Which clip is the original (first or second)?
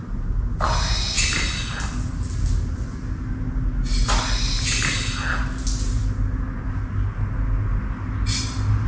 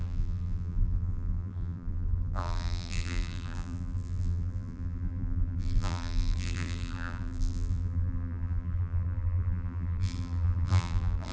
first